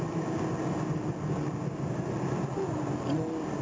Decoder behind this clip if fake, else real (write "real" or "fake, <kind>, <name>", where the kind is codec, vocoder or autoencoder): real